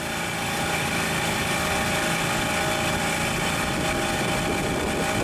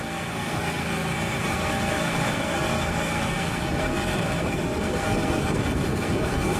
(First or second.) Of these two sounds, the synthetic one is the second